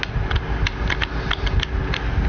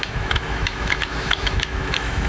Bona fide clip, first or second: first